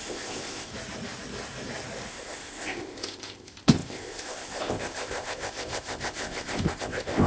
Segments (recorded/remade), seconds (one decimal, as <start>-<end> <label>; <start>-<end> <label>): 0.0-0.7 remade; 0.7-2.1 recorded; 2.1-7.3 remade